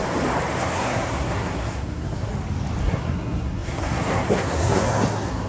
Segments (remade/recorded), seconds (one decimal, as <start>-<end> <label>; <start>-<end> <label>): 0.0-0.6 recorded; 0.6-2.3 remade; 2.3-2.8 recorded; 2.8-5.5 remade